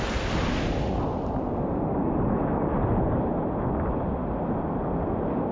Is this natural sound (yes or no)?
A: yes